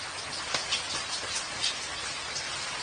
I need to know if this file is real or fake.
real